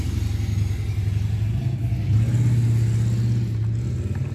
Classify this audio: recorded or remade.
recorded